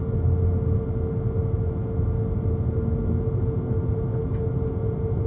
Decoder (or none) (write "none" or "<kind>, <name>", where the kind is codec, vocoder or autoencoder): none